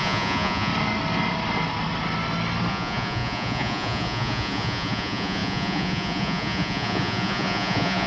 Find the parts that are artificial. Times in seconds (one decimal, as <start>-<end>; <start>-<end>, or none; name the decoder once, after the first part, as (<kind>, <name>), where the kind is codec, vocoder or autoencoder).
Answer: 0.0-0.7 (vocoder, Vocos); 2.7-8.1